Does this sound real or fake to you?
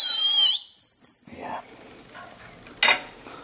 real